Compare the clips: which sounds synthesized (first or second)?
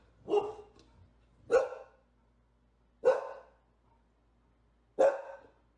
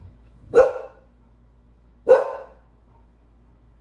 second